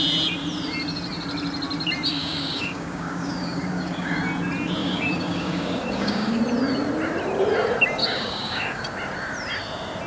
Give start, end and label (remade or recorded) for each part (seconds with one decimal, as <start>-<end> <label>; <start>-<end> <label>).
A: 0.0-2.2 recorded; 2.2-4.2 remade; 4.2-4.8 recorded; 4.8-6.4 remade; 6.4-8.0 recorded; 8.0-8.8 remade; 8.8-10.1 recorded